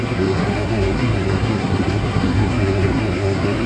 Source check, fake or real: fake